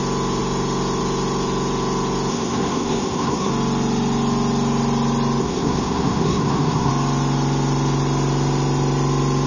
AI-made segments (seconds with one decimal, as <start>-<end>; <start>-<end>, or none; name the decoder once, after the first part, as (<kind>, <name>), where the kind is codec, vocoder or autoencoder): 2.3-3.5 (codec, SNAC); 5.4-6.9